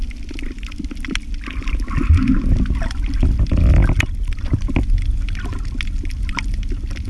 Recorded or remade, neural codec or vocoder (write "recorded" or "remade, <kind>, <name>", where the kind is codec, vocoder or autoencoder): recorded